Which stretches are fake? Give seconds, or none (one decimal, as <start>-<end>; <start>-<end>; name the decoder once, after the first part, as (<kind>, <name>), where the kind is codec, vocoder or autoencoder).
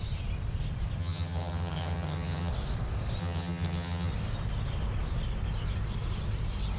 1.0-2.5 (vocoder, HiFi-GAN); 3.2-4.1